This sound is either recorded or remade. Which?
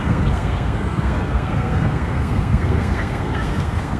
remade